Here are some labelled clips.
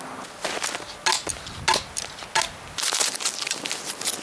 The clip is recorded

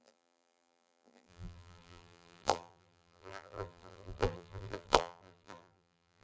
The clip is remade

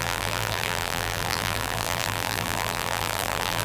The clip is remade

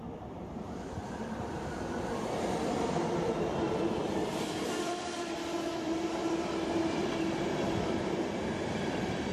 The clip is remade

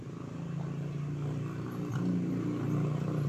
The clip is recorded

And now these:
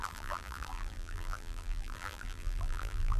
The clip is remade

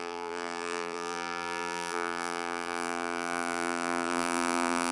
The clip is remade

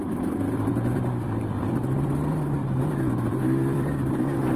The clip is remade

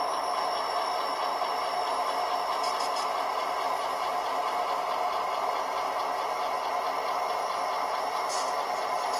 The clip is recorded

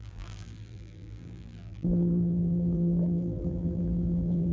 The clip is remade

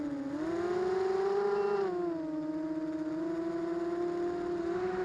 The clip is recorded